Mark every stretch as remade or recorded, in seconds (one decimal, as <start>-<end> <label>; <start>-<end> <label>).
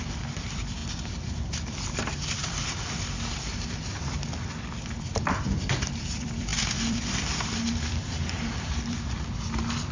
0.0-9.9 remade